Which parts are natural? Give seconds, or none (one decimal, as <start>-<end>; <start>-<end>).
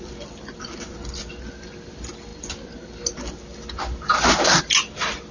0.0-5.3